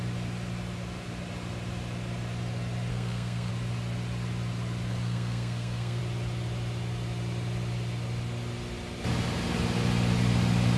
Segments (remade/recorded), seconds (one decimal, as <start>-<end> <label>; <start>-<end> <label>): 0.0-2.9 recorded; 2.9-3.5 remade; 3.5-4.9 recorded; 4.9-6.0 remade; 6.0-10.8 recorded